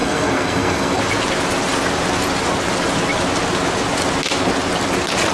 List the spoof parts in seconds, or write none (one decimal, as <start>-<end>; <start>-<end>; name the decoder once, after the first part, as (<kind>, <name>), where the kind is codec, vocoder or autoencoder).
0.0-1.0 (codec, SNAC)